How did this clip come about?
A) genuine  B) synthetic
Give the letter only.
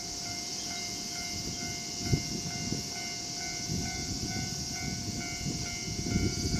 A